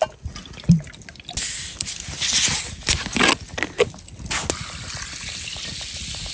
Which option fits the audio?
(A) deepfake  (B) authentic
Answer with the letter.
B